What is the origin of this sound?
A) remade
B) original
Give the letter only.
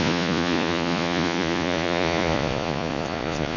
A